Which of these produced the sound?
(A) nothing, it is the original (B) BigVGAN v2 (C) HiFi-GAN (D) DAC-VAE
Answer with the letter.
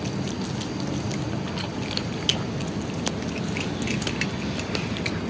A